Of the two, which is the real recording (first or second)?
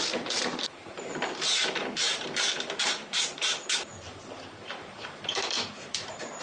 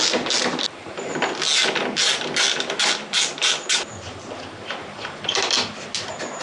second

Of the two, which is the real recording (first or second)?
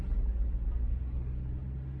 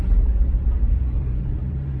first